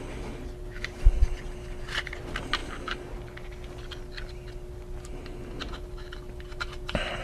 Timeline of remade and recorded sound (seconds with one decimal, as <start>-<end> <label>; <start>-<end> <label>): 0.0-7.2 recorded